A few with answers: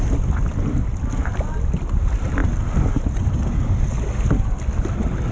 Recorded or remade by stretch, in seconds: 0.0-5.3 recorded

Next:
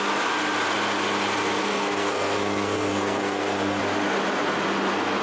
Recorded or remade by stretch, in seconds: 0.0-1.6 recorded; 1.6-3.8 remade; 3.8-5.2 recorded

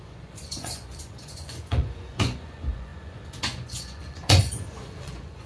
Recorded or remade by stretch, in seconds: 0.0-5.5 remade

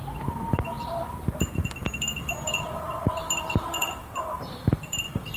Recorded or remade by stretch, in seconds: 0.0-5.4 remade

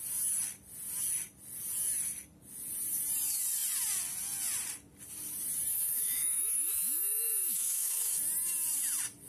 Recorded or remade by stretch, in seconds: 0.0-5.7 recorded; 5.7-8.2 remade; 8.2-9.3 recorded

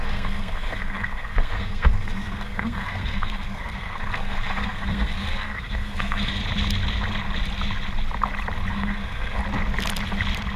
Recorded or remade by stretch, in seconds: 0.0-6.4 remade; 6.4-8.7 recorded; 8.7-9.4 remade; 9.4-10.6 recorded

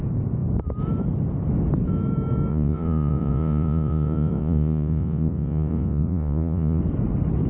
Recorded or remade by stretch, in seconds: 0.0-2.5 recorded; 2.5-6.8 remade; 6.8-7.5 recorded